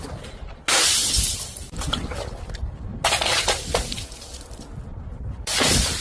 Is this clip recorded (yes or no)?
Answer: no